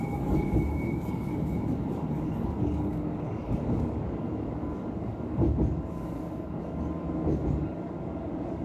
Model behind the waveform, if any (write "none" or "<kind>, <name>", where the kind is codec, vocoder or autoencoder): codec, DAC